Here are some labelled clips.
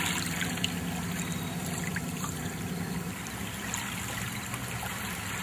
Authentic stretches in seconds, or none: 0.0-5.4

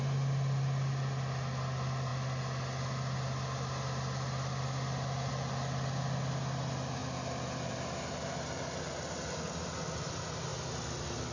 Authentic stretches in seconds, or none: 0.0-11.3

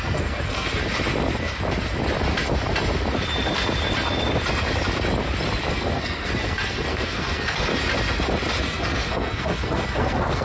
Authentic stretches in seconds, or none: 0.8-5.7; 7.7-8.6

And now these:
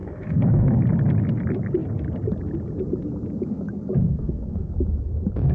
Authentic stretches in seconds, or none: 0.8-4.1; 4.7-5.5